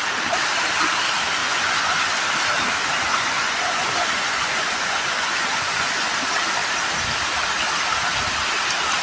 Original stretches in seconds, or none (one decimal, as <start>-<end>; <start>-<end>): 0.0-1.4; 2.1-3.1; 6.1-9.0